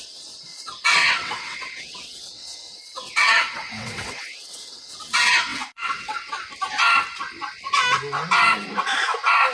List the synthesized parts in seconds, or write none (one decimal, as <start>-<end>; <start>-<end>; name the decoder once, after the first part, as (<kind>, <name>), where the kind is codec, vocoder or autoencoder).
1.0-4.9 (vocoder, WaveNeXt); 5.5-6.3